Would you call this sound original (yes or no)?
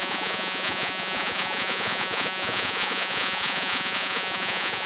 no